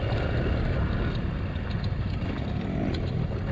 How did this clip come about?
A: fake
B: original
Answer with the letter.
B